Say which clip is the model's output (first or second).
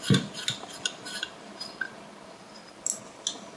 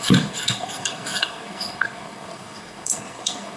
second